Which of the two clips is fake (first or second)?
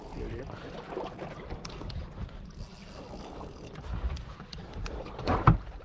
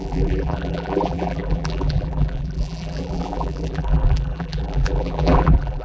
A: second